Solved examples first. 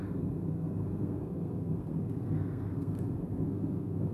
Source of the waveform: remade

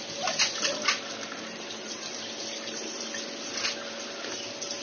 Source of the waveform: recorded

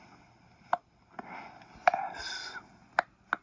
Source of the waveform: recorded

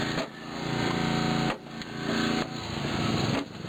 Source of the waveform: recorded